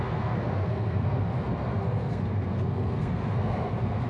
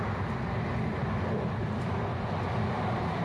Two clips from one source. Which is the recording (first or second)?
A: second